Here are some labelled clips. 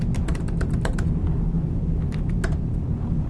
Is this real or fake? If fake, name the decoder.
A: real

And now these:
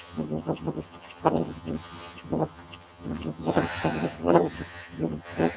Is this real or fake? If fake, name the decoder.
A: fake, vocoder, HiFi-GAN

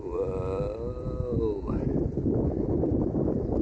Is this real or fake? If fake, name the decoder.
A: real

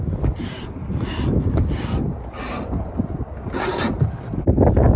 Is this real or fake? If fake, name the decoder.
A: real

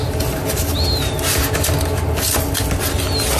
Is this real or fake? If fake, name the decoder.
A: real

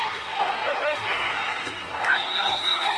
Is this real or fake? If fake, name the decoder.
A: fake, codec, SNAC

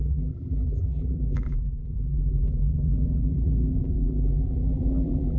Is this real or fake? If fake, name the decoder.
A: fake, vocoder, BigVGAN v2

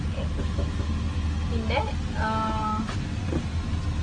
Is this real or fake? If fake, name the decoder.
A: real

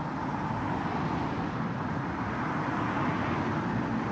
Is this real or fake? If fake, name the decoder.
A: real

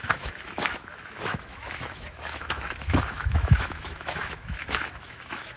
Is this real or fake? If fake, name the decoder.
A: fake, autoencoder, DAC-VAE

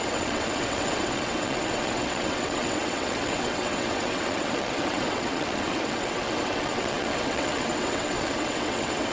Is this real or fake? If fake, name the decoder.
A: fake, vocoder, WaveNeXt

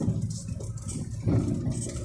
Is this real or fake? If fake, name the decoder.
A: real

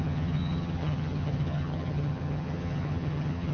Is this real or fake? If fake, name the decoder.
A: fake, vocoder, HiFi-GAN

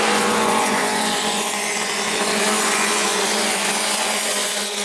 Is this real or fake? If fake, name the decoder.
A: fake, vocoder, Vocos